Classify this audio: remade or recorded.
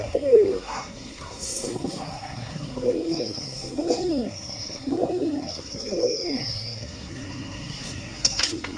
remade